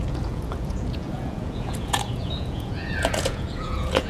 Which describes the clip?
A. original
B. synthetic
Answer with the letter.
B